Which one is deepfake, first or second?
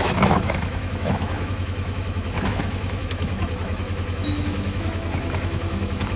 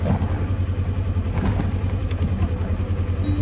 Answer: first